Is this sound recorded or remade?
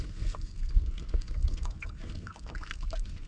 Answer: remade